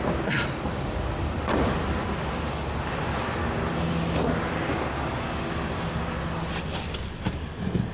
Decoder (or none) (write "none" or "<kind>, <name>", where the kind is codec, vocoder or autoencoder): none